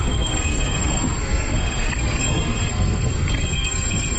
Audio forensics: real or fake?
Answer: fake